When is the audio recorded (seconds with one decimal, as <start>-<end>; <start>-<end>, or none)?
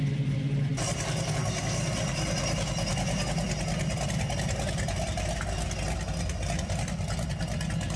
0.0-8.0